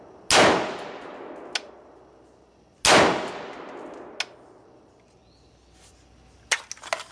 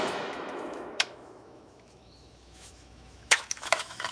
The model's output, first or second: second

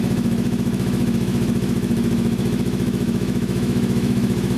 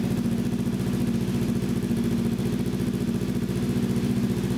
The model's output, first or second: first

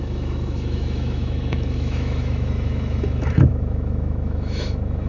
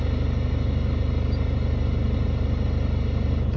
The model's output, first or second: first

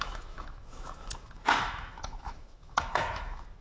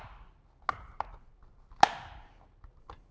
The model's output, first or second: first